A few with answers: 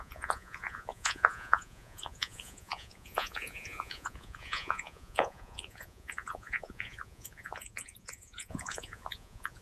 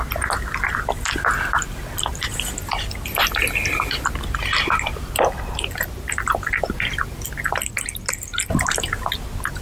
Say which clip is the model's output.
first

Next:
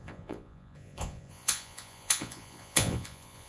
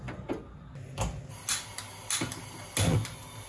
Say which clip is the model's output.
first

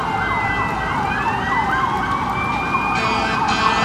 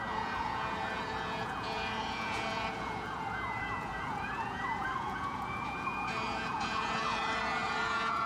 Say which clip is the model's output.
second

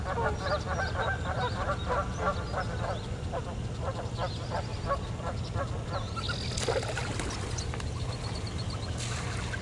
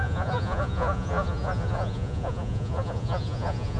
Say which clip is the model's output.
second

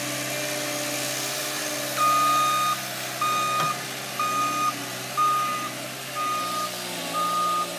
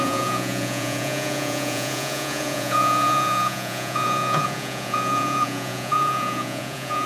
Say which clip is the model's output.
second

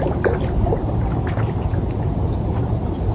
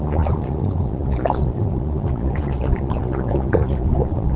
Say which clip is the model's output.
second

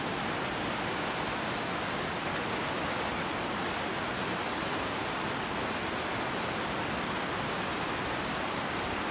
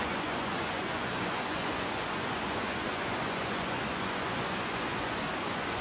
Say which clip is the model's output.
second